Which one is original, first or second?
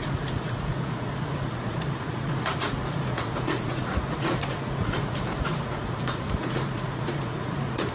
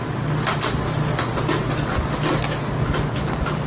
second